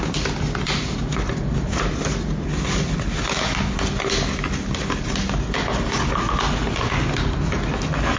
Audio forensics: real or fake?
real